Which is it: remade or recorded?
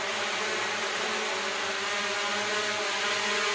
recorded